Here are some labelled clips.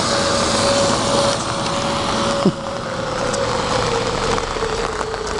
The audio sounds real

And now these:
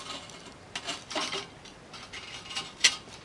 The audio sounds real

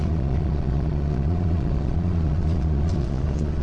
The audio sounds fake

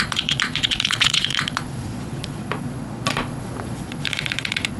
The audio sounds fake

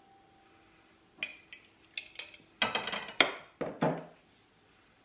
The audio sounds real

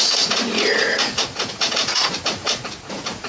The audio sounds fake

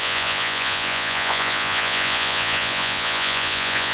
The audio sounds fake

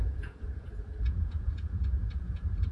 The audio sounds fake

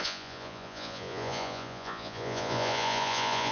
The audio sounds fake